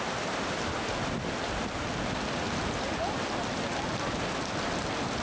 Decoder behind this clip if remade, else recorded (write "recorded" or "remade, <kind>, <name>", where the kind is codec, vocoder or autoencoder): recorded